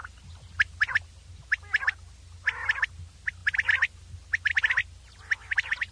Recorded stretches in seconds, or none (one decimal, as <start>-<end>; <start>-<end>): 0.0-5.9